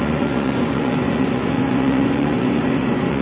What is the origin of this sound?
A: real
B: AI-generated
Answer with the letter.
B